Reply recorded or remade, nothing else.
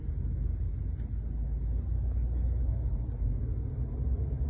recorded